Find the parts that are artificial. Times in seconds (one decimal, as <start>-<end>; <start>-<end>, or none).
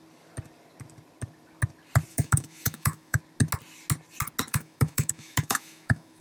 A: 2.1-3.2; 4.5-6.2